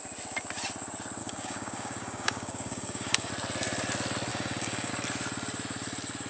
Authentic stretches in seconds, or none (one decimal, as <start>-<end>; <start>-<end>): 0.0-1.2; 3.3-4.3; 4.9-6.3